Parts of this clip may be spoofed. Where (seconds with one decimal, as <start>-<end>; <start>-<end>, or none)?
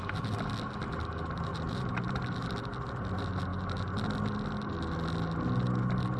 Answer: 1.5-2.2